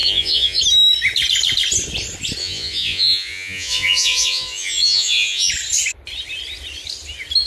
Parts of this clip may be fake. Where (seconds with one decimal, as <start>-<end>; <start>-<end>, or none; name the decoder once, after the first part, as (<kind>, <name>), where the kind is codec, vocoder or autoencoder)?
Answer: 0.0-0.6 (vocoder, Vocos); 2.4-5.5